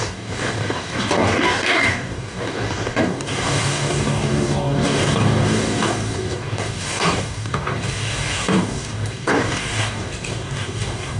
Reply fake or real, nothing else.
fake